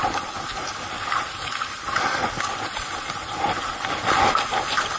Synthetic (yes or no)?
no